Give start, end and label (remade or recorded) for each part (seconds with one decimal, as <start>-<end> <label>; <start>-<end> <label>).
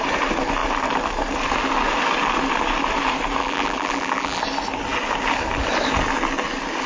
0.0-3.4 recorded; 3.4-4.4 remade; 4.4-6.9 recorded